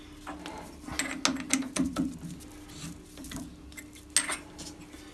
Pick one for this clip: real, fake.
real